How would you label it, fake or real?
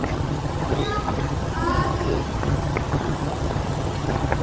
fake